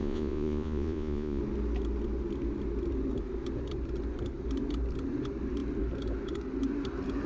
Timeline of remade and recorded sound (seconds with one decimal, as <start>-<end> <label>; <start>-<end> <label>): 0.0-1.4 remade; 1.4-7.3 recorded